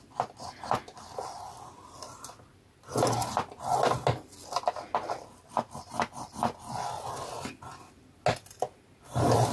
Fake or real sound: real